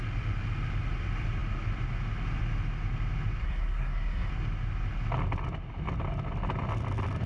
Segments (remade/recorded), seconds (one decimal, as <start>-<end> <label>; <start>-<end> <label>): 0.0-3.4 recorded; 3.4-4.3 remade; 4.3-7.3 recorded